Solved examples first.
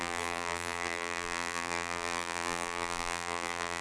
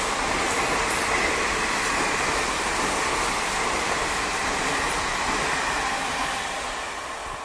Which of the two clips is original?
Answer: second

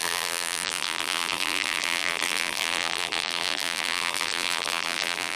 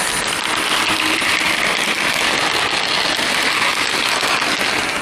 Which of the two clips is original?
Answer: second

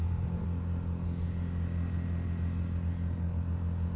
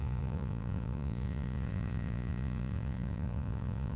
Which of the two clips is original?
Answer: first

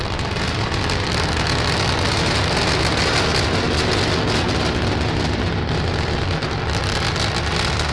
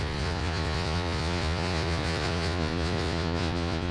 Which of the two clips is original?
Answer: first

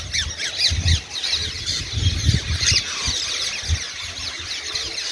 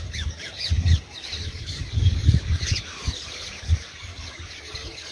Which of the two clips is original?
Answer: first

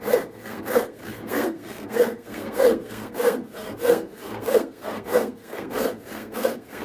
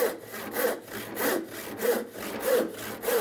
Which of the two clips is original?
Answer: second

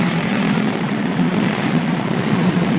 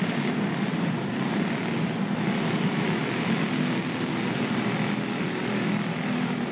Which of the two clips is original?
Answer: second